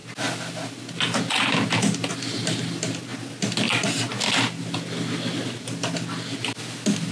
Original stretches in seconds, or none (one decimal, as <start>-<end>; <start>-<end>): 0.0-7.1